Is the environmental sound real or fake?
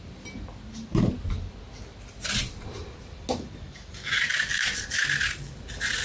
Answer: real